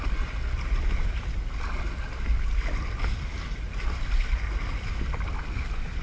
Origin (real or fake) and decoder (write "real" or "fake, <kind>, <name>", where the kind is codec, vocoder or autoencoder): real